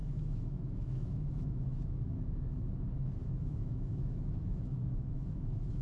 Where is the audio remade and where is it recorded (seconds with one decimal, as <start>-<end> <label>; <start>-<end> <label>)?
0.0-5.8 remade